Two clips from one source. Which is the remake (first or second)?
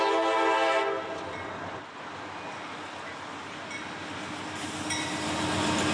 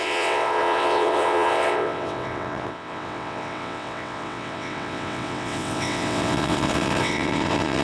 second